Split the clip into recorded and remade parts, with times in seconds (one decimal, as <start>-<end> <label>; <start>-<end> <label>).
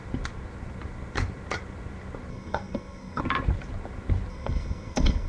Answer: 0.0-2.3 recorded; 2.3-3.2 remade; 3.2-4.3 recorded; 4.3-5.3 remade